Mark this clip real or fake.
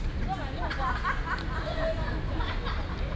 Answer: real